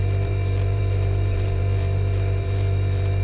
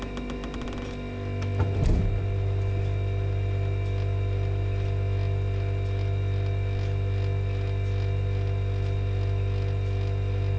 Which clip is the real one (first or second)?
second